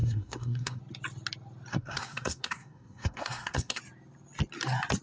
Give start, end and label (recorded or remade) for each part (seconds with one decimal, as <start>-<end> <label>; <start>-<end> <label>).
0.0-0.8 remade; 0.8-1.7 recorded; 1.7-3.8 remade; 3.8-5.0 recorded